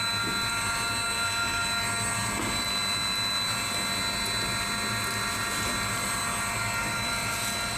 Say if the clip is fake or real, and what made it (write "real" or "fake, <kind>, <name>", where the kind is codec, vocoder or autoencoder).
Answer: real